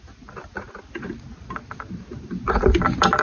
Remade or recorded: recorded